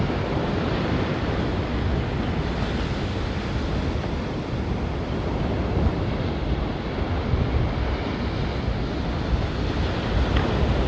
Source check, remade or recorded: recorded